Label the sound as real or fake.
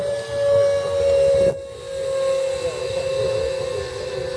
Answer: real